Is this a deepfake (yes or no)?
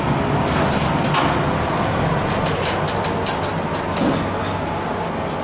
no